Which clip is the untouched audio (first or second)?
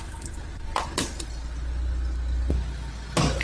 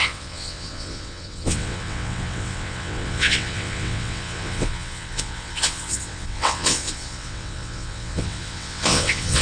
first